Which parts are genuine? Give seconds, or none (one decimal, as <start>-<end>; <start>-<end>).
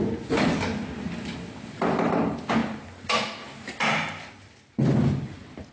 0.0-5.7